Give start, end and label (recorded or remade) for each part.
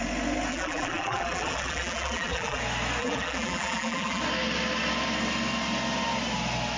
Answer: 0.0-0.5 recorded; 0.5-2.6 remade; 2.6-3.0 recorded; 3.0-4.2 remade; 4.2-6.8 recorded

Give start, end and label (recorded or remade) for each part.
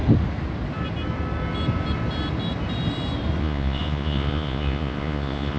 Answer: 0.0-3.4 recorded; 3.4-5.6 remade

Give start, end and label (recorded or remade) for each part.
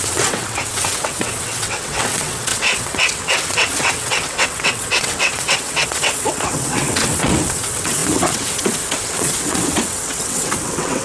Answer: 0.0-11.0 remade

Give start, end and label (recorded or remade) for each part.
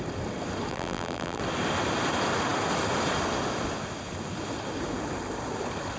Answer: 0.0-0.7 recorded; 0.7-1.4 remade; 1.4-6.0 recorded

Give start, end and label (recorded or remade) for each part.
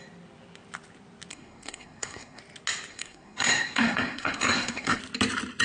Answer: 0.0-1.3 recorded; 1.3-2.4 remade; 2.4-2.9 recorded; 2.9-5.0 remade; 5.0-5.6 recorded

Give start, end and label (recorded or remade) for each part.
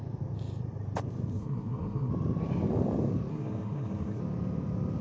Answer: 0.0-1.3 recorded; 1.3-2.1 remade; 2.1-3.3 recorded; 3.3-4.2 remade; 4.2-5.0 recorded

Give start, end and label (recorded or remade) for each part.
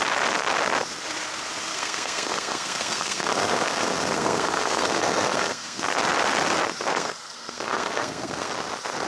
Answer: 0.0-1.7 recorded; 1.7-5.8 remade; 5.8-6.9 recorded; 6.9-8.5 remade; 8.5-9.1 recorded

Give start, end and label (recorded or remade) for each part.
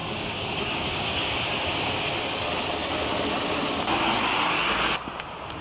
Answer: 0.0-2.1 remade; 2.1-5.6 recorded